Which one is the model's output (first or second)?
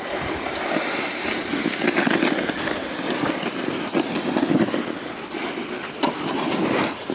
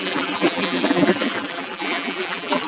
second